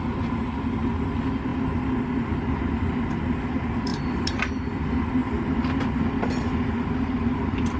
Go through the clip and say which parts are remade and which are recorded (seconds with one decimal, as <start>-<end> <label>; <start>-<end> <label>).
0.0-3.9 recorded; 3.9-4.6 remade; 4.6-7.8 recorded